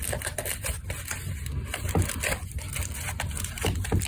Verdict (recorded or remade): recorded